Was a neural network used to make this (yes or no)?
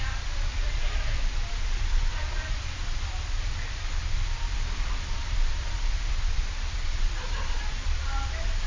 yes